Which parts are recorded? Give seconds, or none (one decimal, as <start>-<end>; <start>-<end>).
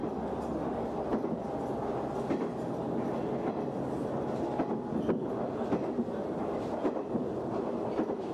0.0-8.3